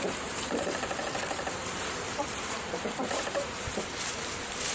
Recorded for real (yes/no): no